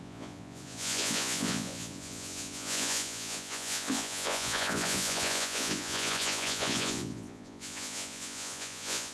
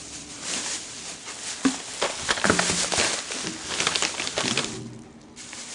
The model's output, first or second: first